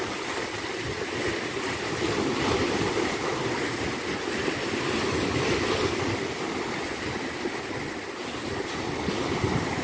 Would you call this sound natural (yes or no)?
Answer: yes